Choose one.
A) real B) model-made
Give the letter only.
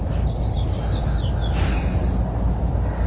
A